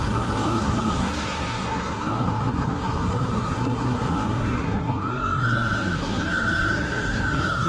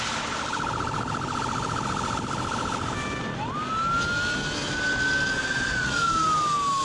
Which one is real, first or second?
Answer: second